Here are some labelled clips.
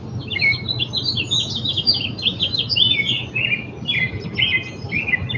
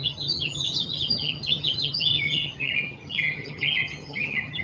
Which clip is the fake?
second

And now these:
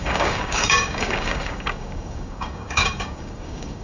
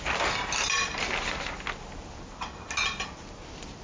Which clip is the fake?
first